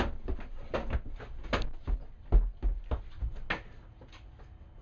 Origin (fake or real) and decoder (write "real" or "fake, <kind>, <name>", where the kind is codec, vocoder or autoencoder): real